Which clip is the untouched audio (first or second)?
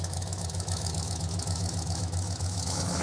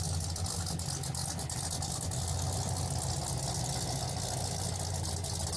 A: second